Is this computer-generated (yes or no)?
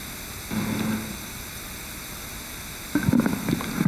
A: no